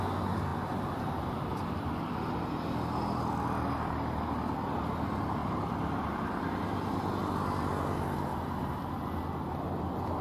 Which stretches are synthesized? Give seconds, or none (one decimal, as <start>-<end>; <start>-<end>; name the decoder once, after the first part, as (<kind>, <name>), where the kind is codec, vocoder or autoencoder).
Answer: 5.4-6.3 (vocoder, BigVGAN v2)